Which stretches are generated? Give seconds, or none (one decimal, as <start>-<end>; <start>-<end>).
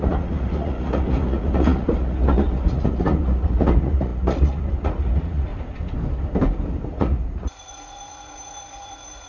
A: 0.0-5.5; 6.9-9.3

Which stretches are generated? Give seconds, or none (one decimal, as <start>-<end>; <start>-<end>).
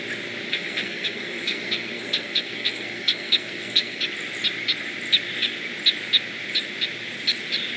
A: 0.5-4.0